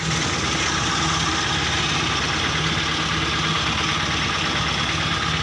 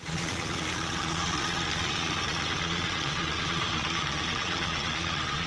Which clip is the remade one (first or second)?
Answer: second